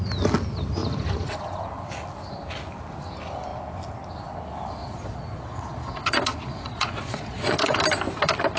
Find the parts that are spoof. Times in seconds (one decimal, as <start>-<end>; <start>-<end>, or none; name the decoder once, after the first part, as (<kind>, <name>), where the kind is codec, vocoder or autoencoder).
4.8-7.8 (vocoder, Vocos)

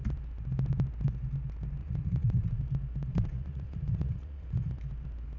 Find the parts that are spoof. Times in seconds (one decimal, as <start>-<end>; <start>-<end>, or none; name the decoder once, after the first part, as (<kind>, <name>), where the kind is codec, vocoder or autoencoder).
1.8-2.6 (vocoder, Vocos); 3.1-4.8